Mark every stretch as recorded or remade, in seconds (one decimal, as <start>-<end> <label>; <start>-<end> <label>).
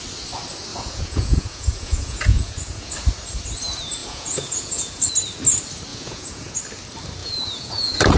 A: 0.0-0.7 recorded; 0.7-2.9 remade; 2.9-4.0 recorded; 4.0-5.1 remade; 5.1-5.9 recorded; 5.9-6.6 remade; 6.6-7.2 recorded; 7.2-8.2 remade